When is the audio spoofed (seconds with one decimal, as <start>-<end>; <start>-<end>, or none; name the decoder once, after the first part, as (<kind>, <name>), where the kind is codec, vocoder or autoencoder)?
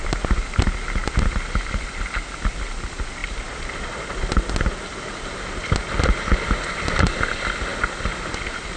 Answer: none